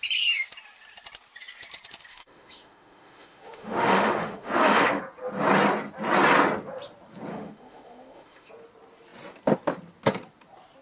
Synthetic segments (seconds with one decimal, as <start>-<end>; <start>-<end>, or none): 2.1-5.0; 7.3-8.5